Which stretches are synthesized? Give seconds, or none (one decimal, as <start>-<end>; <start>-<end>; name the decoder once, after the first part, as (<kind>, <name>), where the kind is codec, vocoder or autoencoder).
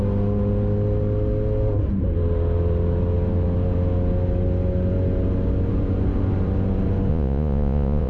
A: 7.1-8.1 (vocoder, Vocos)